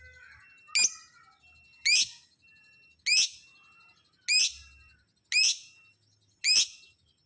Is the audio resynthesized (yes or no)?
no